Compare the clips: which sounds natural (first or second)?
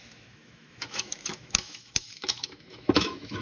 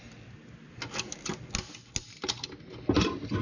second